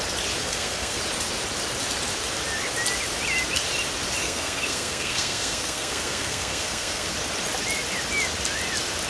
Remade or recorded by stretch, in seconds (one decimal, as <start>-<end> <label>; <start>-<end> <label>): 0.0-0.4 recorded; 0.4-1.0 remade; 1.0-4.2 recorded; 4.2-7.1 remade; 7.1-9.1 recorded